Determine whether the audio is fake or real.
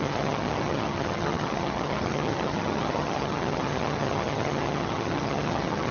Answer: fake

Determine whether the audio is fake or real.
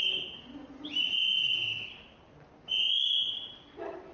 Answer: real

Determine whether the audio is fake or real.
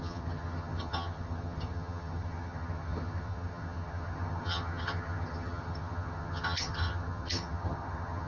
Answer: fake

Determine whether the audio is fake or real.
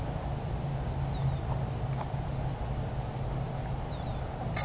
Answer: real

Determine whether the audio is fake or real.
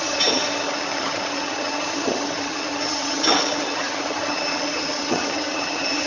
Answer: fake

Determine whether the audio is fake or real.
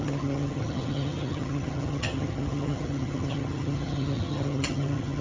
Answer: fake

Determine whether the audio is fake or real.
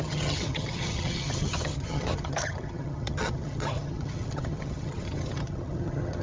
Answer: fake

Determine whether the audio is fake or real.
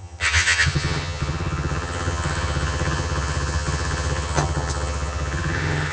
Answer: fake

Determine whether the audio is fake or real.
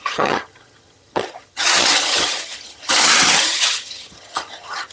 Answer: fake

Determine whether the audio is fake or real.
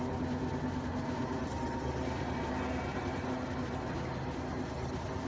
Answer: real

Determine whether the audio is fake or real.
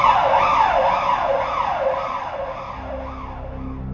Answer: real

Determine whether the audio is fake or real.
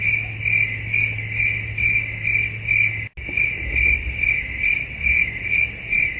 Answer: real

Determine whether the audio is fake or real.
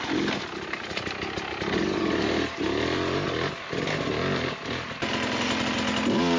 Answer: real